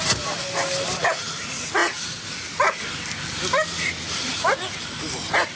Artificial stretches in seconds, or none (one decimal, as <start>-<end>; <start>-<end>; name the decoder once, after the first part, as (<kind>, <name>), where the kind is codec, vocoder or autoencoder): none